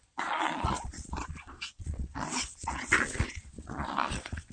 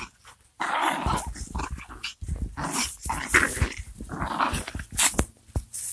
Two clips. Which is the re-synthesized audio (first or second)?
first